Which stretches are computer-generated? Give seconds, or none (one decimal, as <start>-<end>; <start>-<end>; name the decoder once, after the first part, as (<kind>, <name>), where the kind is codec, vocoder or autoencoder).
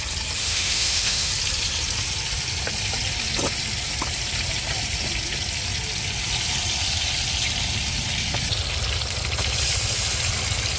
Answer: 0.4-1.3 (autoencoder, DAC-VAE)